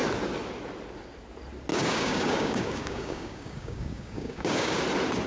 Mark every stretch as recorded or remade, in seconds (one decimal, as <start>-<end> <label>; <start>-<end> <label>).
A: 0.0-1.7 recorded; 1.7-4.8 remade; 4.8-5.3 recorded